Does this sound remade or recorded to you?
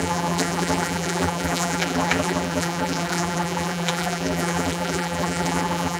remade